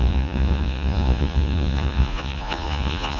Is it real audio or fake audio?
fake